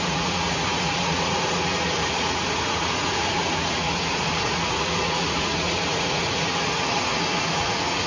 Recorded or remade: remade